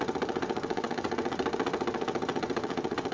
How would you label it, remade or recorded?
remade